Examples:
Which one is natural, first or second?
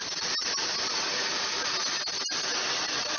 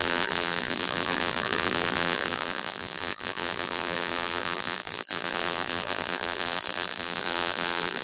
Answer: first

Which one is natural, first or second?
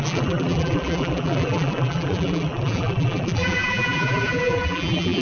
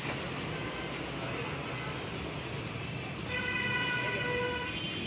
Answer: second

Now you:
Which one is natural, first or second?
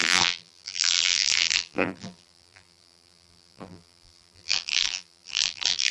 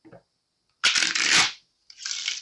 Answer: second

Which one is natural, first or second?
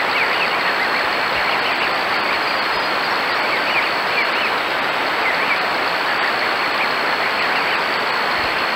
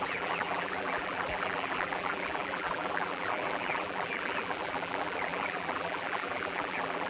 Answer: first